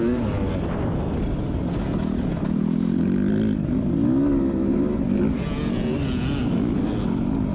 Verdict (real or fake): real